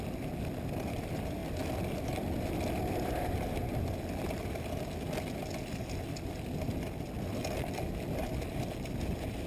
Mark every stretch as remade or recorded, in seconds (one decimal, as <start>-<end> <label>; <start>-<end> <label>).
0.0-9.5 recorded